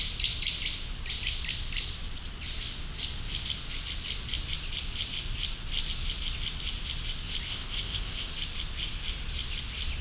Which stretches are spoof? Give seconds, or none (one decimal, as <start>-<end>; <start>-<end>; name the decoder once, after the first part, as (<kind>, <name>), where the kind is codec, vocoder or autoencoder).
7.5-8.3 (codec, ZipCodec)